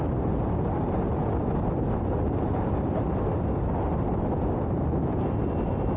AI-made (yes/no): no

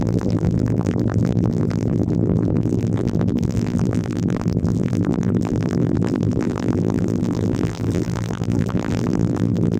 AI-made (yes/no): yes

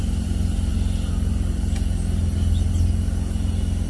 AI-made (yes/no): no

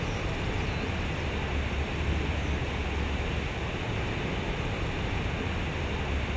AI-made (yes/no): no